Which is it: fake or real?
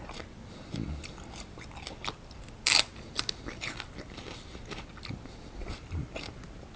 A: real